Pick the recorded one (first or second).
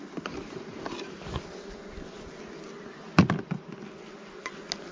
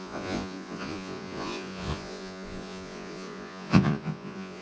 first